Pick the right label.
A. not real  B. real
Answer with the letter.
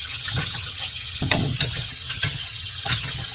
A